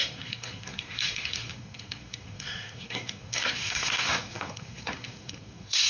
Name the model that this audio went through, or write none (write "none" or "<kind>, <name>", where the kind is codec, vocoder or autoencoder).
codec, SNAC